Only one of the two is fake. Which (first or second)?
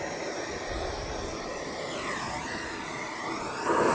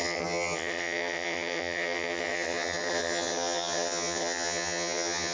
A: second